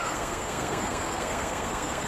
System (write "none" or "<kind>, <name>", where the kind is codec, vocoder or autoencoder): codec, SNAC